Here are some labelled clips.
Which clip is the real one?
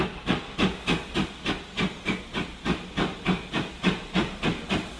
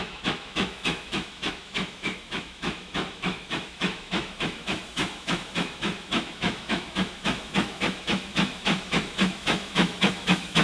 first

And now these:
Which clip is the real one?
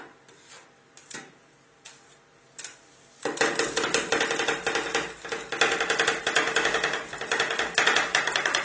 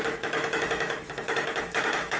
first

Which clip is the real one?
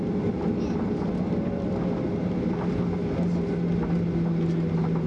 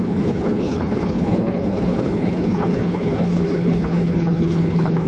first